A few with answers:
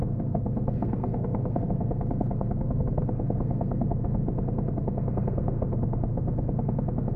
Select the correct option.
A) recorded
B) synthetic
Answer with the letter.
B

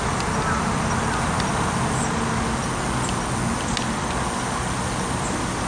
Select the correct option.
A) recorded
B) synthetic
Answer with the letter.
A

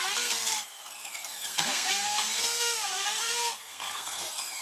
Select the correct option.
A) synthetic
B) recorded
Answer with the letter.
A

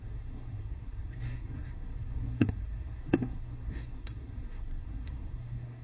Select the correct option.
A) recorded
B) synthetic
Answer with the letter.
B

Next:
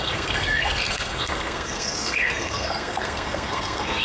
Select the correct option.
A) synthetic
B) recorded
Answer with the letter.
A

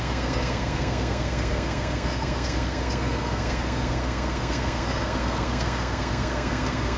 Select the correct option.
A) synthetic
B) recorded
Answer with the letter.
A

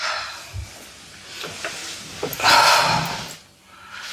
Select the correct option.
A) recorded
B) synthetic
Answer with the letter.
A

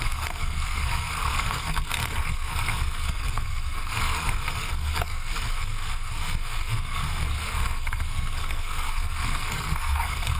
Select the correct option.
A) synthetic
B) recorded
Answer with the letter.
A